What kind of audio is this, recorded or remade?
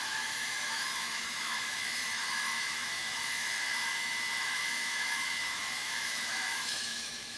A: remade